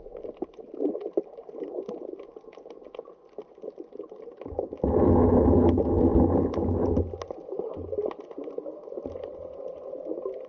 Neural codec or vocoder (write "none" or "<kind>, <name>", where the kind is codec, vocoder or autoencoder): none